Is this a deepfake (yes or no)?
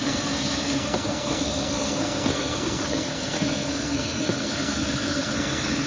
yes